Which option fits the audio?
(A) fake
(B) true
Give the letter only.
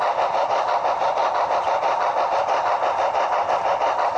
B